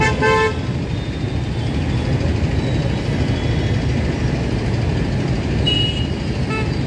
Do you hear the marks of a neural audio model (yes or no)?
no